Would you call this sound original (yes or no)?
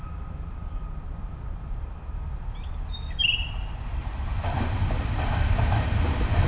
no